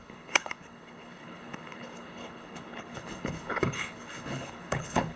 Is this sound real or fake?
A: fake